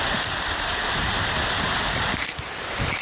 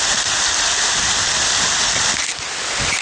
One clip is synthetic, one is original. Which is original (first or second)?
second